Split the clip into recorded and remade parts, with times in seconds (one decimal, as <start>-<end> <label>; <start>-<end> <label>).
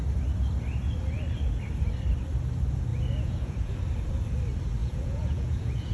0.0-2.9 recorded; 2.9-3.7 remade; 3.7-4.8 recorded; 4.8-5.9 remade